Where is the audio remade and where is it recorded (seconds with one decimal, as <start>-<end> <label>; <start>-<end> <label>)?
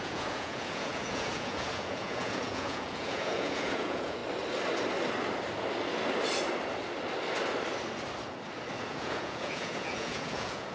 0.0-4.2 remade; 4.2-8.8 recorded; 8.8-10.7 remade